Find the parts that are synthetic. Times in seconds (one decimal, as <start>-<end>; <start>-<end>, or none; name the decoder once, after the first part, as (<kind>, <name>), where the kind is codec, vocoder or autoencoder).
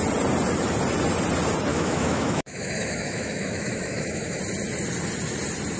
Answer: 1.7-4.4 (autoencoder, DAC-VAE)